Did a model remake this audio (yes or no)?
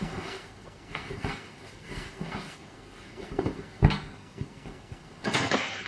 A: yes